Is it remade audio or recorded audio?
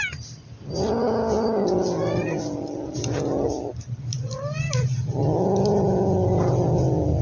recorded